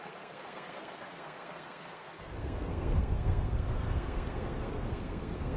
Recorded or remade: remade